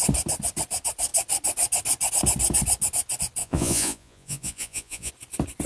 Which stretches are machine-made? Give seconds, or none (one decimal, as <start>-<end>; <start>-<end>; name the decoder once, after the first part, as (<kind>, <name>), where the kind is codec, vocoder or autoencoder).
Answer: 3.4-5.1 (vocoder, Vocos)